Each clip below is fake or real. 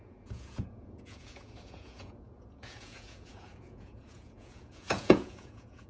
fake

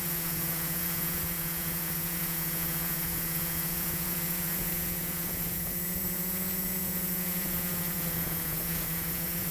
fake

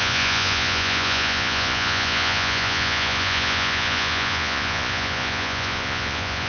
fake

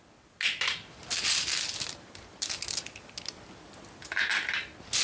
real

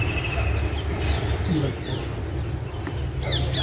real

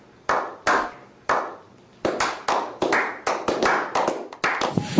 real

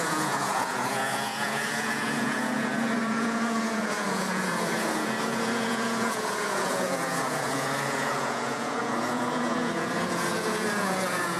fake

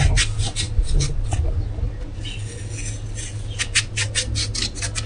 real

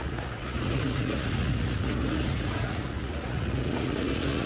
fake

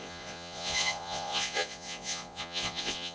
fake